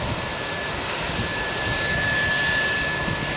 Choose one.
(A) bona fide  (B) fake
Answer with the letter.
A